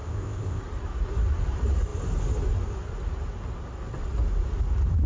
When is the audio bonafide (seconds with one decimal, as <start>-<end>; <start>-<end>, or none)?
0.6-5.1